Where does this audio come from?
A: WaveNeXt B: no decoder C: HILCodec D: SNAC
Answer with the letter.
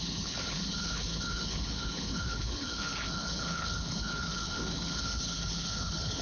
C